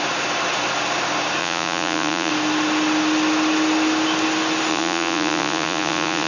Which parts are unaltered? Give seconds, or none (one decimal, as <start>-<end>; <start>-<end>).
0.0-1.4; 2.3-4.7